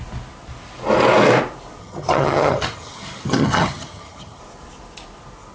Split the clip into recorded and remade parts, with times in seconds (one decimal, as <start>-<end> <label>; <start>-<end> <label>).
0.0-1.8 recorded; 1.8-4.4 remade; 4.4-5.5 recorded